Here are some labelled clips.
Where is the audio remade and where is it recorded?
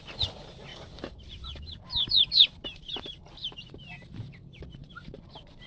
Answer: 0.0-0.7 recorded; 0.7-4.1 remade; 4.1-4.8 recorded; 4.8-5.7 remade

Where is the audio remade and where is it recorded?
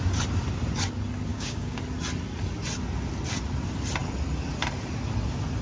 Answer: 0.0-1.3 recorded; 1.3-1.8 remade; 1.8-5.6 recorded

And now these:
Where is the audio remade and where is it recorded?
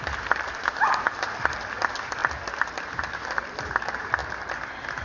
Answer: 0.0-2.2 remade; 2.2-3.0 recorded; 3.0-4.2 remade; 4.2-5.0 recorded